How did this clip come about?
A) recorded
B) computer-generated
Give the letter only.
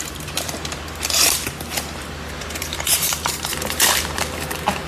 B